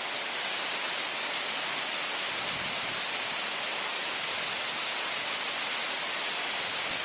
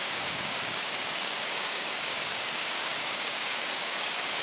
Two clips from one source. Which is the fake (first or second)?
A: second